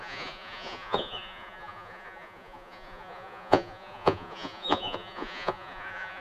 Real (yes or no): no